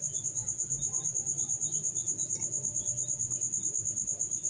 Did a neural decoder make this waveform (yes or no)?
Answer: no